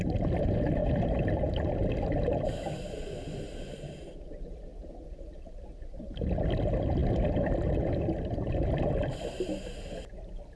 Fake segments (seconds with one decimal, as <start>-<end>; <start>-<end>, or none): none